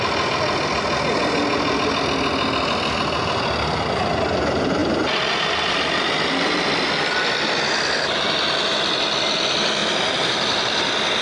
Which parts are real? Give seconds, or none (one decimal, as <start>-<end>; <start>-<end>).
0.0-4.8; 8.2-9.8